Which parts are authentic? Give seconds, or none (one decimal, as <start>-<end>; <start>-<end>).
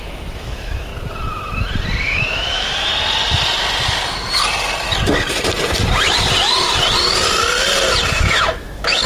0.9-2.0; 2.9-8.1